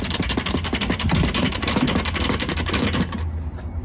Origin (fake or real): fake